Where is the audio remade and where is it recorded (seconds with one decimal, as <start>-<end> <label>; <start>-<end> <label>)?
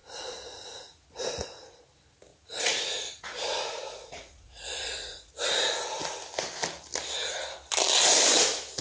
0.0-1.9 remade; 1.9-2.3 recorded; 2.3-5.3 remade; 5.3-8.8 recorded